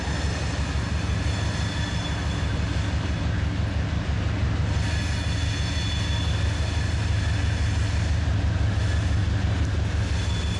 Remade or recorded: recorded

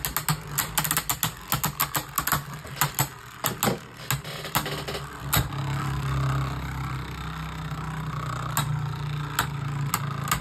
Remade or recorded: recorded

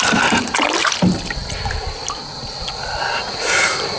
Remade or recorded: recorded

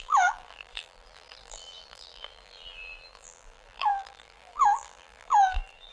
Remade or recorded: remade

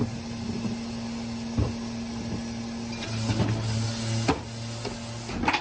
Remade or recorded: recorded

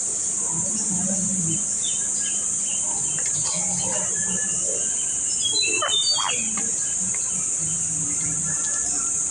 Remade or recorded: recorded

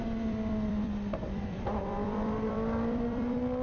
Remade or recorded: remade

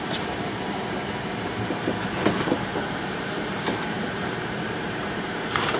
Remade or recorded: remade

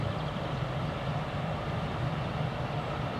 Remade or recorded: remade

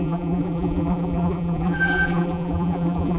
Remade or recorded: remade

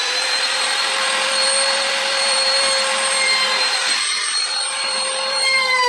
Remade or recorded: remade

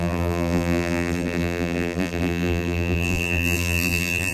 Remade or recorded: remade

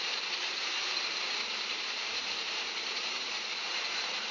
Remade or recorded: remade